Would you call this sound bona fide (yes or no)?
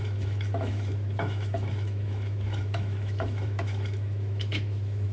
no